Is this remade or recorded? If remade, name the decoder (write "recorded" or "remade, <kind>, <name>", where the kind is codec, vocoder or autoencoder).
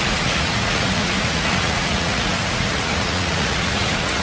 remade, vocoder, Vocos